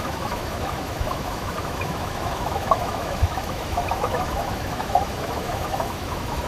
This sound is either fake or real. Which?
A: fake